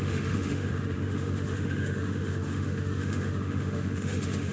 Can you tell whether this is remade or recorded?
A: remade